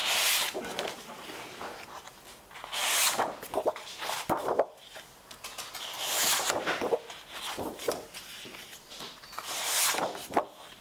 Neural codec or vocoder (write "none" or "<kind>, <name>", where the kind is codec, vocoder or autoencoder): none